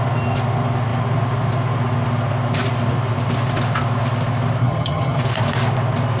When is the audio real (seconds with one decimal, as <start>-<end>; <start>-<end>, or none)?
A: 0.0-4.6; 5.2-6.2